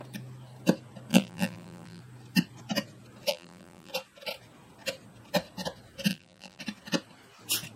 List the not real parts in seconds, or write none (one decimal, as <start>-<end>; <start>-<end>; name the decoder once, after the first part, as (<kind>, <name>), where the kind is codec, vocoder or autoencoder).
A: 1.1-2.0 (vocoder, BigVGAN v2); 3.3-3.9; 6.1-6.6